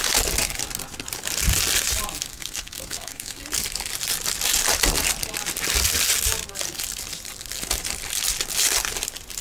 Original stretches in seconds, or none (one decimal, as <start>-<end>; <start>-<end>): 0.0-2.3; 3.4-9.4